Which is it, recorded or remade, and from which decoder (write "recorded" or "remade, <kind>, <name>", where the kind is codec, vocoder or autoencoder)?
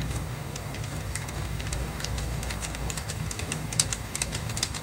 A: remade, codec, DAC